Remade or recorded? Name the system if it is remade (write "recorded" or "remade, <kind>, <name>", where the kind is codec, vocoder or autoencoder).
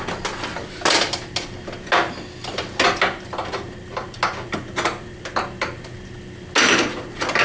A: recorded